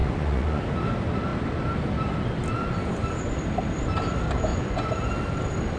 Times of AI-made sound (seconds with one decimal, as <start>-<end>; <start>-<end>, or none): 0.0-0.6; 4.5-5.1